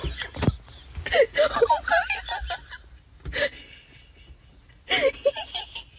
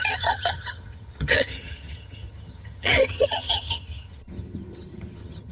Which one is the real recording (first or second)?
first